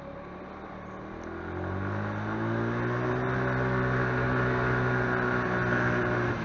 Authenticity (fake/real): real